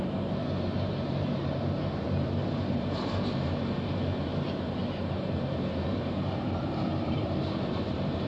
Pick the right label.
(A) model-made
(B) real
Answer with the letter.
A